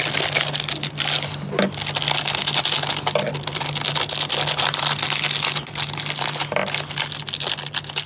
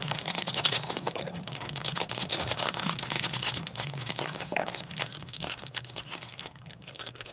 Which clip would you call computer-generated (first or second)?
second